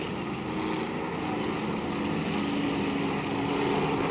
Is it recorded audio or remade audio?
recorded